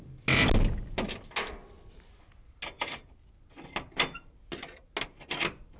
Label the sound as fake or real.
real